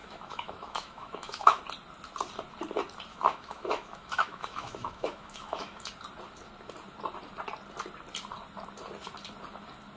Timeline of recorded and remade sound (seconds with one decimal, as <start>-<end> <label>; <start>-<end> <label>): 0.0-1.6 remade; 1.6-3.1 recorded; 3.1-5.9 remade; 5.9-10.0 recorded